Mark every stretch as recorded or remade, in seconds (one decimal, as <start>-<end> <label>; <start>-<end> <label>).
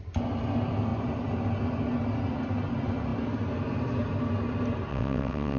0.0-4.9 recorded; 4.9-5.6 remade